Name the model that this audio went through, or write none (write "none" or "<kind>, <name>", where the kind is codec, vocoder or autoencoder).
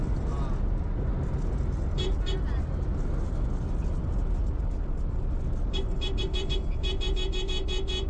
none